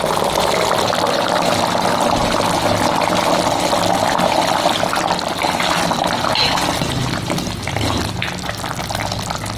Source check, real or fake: real